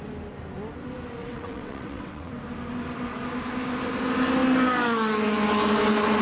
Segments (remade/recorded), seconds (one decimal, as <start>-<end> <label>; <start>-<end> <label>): 0.0-1.2 recorded; 1.2-2.3 remade; 2.3-6.2 recorded